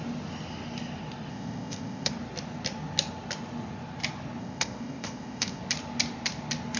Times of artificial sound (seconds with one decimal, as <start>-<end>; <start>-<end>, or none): 1.3-2.1; 4.4-5.6

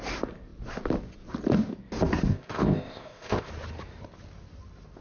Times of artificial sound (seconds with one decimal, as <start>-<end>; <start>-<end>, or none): 2.3-3.5

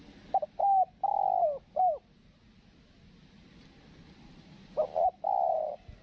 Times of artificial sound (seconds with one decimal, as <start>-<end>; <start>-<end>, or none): none

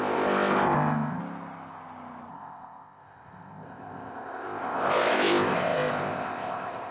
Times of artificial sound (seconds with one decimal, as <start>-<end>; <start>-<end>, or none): 0.0-1.2; 2.3-6.9